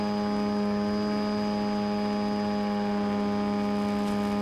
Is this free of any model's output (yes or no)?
yes